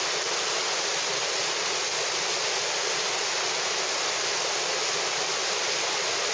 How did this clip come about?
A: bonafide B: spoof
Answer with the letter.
A